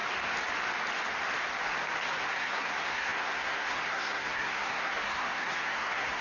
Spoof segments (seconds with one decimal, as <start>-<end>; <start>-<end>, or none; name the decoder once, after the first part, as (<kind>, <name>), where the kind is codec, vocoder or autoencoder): 2.2-6.2 (codec, SNAC)